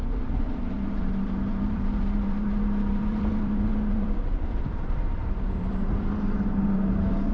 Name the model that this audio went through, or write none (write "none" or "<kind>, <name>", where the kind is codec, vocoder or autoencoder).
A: vocoder, BigVGAN v2